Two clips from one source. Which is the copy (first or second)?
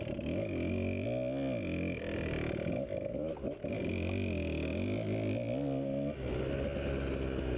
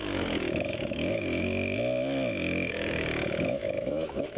second